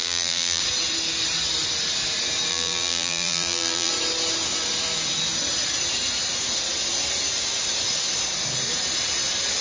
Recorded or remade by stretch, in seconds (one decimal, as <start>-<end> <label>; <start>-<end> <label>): 0.0-0.6 remade; 0.6-2.5 recorded; 2.5-3.9 remade; 3.9-9.6 recorded